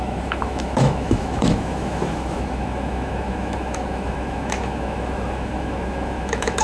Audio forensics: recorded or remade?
remade